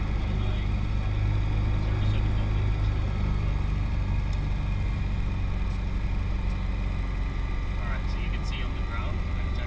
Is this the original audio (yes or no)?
yes